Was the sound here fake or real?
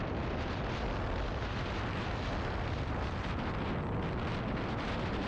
real